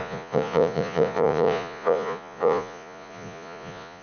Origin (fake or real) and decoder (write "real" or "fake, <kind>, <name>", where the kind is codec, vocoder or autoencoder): fake, vocoder, Vocos